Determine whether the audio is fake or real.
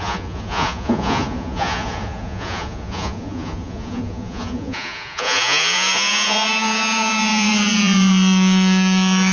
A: fake